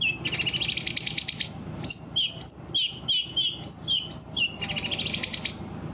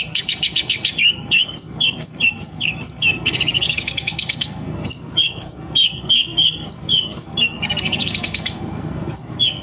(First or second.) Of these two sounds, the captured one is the first